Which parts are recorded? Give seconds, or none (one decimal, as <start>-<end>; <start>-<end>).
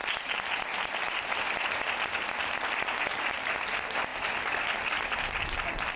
0.0-6.0